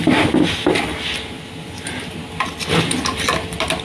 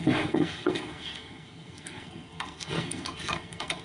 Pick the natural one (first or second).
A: first